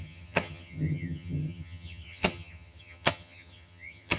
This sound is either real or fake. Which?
fake